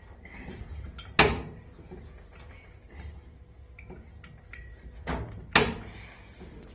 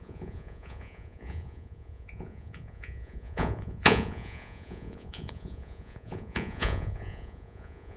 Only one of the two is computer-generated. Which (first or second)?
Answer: second